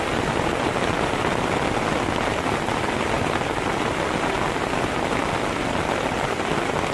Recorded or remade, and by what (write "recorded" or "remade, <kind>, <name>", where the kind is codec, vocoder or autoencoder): recorded